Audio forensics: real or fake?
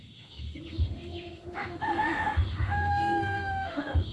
fake